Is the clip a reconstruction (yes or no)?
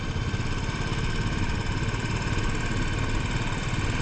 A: no